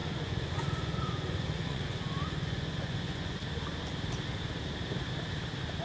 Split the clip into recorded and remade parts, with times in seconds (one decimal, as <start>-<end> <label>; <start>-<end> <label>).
0.0-3.4 remade; 3.4-5.8 recorded